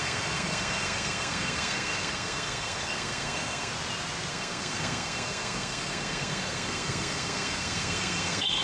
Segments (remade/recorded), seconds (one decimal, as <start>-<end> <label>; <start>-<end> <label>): 0.0-3.7 remade; 3.7-4.3 recorded; 4.3-8.6 remade